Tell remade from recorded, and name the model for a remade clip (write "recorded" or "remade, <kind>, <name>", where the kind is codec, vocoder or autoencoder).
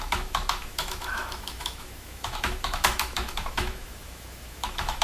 remade, autoencoder, DAC-VAE